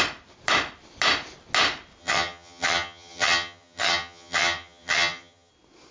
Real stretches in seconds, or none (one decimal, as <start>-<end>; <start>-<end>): 0.0-2.0; 5.5-5.9